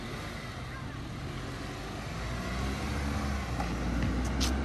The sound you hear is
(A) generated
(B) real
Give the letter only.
B